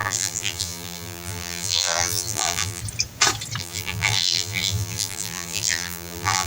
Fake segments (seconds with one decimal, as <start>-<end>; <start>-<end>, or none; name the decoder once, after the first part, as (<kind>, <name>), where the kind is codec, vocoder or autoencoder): 0.0-2.8 (vocoder, BigVGAN v2); 3.6-6.5